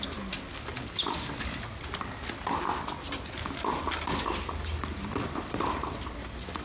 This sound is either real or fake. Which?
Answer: real